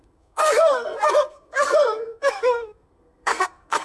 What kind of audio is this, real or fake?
fake